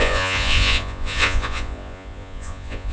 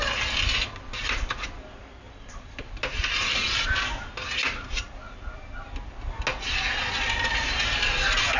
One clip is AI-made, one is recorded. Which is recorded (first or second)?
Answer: second